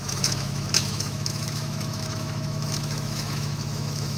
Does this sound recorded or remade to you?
remade